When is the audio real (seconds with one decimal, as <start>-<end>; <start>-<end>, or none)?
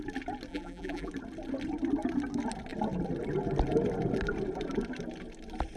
0.0-0.5; 1.1-5.8